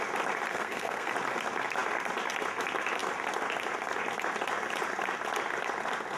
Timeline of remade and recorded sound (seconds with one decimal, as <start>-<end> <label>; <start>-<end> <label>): 0.0-0.5 recorded; 0.5-1.1 remade; 1.1-6.2 recorded